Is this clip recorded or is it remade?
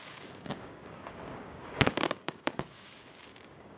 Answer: remade